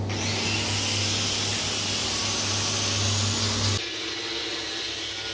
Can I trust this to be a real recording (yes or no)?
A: yes